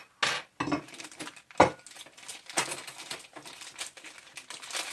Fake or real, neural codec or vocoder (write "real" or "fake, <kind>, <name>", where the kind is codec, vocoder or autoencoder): real